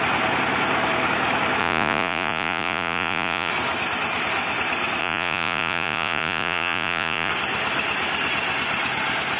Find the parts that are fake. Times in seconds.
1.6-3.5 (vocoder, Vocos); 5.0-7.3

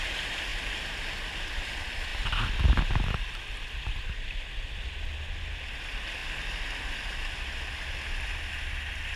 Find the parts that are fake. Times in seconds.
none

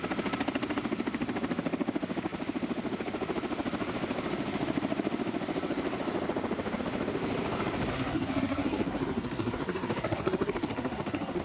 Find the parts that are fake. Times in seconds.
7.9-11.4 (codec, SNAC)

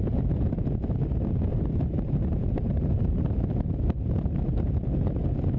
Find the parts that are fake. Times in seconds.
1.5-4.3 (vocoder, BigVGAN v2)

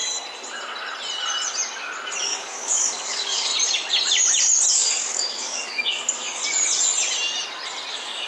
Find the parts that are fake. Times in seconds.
2.2-3.5 (codec, DAC); 4.7-6.4; 7.9-8.3